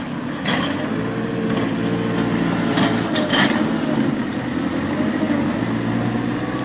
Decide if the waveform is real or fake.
real